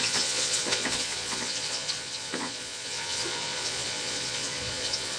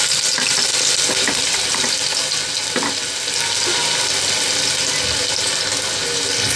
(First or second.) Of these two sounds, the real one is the second